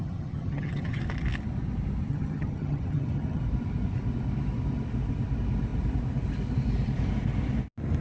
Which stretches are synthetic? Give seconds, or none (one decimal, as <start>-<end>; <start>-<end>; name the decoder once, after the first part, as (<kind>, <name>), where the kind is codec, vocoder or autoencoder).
0.0-1.0 (vocoder, HiFi-GAN); 2.1-3.4